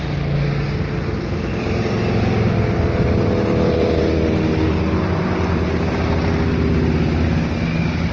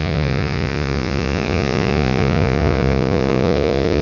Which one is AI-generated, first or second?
second